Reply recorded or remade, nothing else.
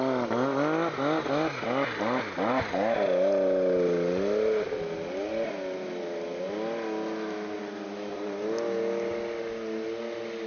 recorded